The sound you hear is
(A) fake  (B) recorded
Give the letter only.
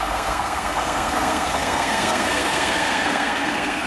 A